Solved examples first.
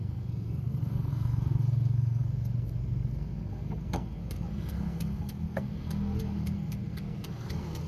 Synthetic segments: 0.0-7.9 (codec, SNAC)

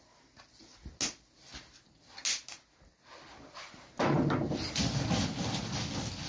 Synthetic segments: none

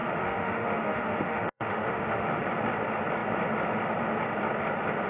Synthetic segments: 0.0-2.4 (autoencoder, DAC-VAE)

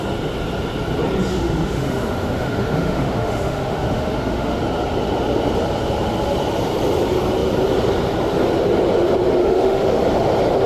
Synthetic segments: 1.3-4.6 (autoencoder, DAC-VAE); 9.4-10.0